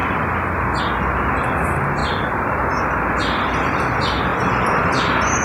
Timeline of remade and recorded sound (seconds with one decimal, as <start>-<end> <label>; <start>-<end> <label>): 0.0-2.0 recorded; 2.0-2.8 remade; 2.8-5.4 recorded